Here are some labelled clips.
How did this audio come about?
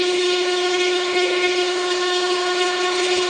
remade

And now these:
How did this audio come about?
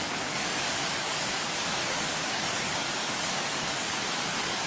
remade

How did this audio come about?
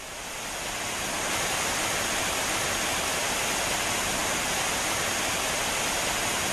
recorded